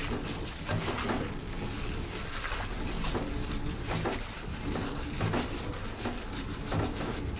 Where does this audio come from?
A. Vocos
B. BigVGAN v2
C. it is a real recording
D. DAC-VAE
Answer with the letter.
C